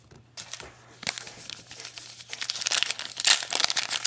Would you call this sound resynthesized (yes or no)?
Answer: no